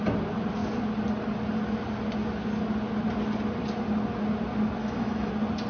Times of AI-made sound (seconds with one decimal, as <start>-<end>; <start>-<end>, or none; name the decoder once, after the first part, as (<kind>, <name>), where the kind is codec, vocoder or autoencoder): 4.8-5.3 (autoencoder, DAC-VAE)